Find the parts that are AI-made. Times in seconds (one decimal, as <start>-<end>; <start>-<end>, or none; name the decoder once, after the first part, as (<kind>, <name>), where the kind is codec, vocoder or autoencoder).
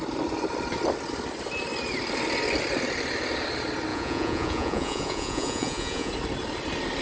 3.9-6.1 (vocoder, Vocos)